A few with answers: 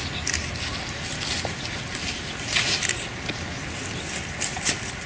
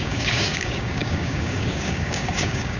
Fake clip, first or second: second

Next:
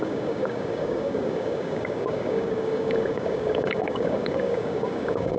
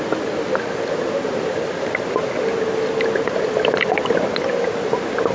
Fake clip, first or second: first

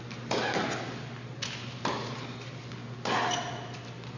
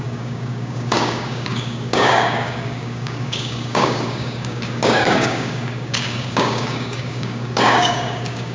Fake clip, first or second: second